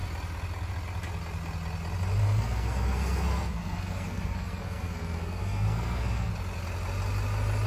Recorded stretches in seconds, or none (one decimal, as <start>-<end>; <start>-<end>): 0.0-2.2; 6.3-7.7